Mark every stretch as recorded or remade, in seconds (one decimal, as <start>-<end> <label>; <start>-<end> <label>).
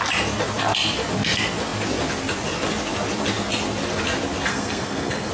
0.0-4.5 recorded; 4.5-5.3 remade